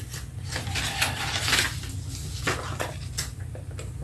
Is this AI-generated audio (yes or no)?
no